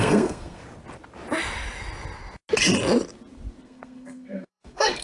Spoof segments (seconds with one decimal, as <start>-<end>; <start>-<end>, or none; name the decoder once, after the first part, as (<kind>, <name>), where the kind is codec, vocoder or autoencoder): 0.0-0.6 (codec, SNAC); 3.6-5.0